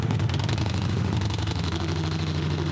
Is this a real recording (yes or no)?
no